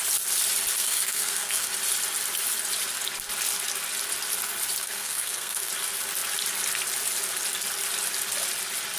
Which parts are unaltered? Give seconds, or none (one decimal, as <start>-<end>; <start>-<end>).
0.0-0.8; 1.7-4.8; 5.7-9.0